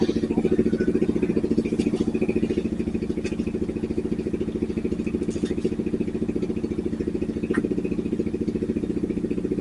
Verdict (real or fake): real